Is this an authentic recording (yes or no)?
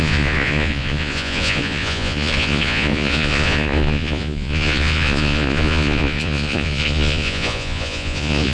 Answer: no